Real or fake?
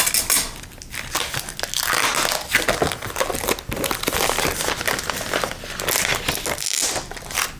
real